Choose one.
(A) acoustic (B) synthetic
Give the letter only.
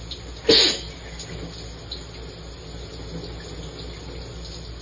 A